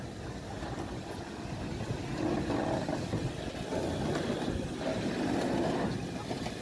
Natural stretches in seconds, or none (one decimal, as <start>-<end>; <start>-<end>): 0.0-6.6